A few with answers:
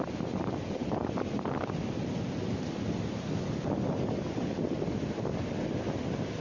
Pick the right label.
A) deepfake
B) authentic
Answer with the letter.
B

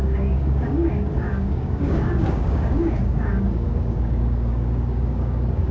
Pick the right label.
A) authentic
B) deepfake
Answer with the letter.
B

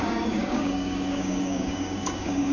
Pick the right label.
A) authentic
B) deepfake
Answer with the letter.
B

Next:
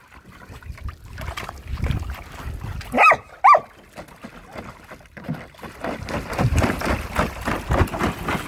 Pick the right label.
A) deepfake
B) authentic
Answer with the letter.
B